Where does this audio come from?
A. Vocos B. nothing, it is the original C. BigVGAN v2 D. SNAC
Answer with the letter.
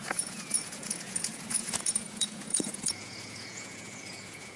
A